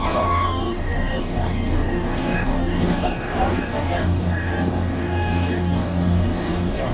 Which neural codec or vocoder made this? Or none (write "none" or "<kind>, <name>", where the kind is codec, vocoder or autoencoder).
codec, DAC